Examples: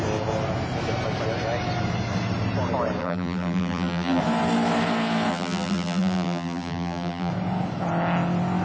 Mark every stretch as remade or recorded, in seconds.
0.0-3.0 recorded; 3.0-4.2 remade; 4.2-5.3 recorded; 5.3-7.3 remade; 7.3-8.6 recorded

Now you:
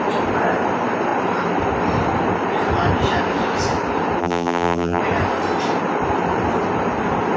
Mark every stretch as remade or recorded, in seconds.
0.0-4.2 recorded; 4.2-5.0 remade; 5.0-7.4 recorded

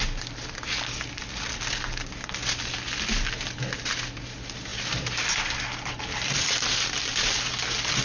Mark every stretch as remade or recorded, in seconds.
0.0-8.0 recorded

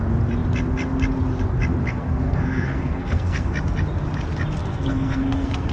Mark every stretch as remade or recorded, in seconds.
0.0-1.8 recorded; 1.8-3.5 remade; 3.5-4.6 recorded; 4.6-5.7 remade

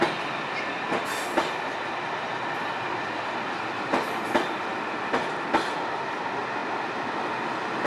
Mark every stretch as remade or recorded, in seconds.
0.0-7.9 recorded

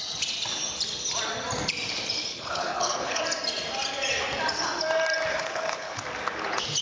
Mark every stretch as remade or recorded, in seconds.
0.0-2.3 recorded; 2.3-3.2 remade; 3.2-5.3 recorded; 5.3-6.0 remade; 6.0-6.8 recorded

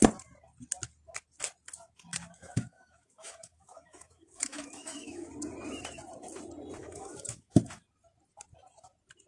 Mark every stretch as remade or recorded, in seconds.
0.0-2.1 recorded; 2.1-5.3 remade; 5.3-6.8 recorded; 6.8-7.6 remade; 7.6-9.3 recorded

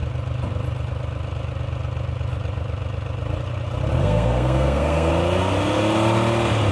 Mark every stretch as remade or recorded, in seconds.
0.0-4.0 recorded; 4.0-5.1 remade; 5.1-6.7 recorded